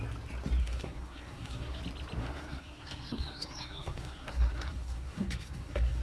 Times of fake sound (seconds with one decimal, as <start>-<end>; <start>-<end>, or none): 0.6-1.8; 2.2-6.0